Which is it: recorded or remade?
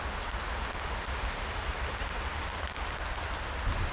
recorded